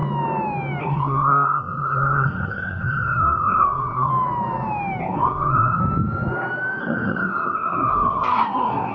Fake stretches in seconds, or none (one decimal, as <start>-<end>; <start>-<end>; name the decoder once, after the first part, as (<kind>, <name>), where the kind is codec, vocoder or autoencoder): 0.8-4.1 (codec, SNAC); 5.0-5.8; 6.8-8.9